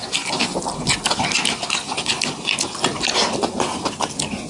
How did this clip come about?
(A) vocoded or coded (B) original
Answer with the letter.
B